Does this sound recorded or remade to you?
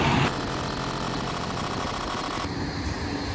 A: recorded